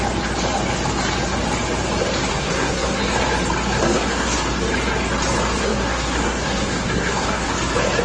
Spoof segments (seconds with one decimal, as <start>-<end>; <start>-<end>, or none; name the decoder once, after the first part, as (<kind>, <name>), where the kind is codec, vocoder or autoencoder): 2.3-3.0 (codec, SNAC); 3.8-4.4; 5.6-7.5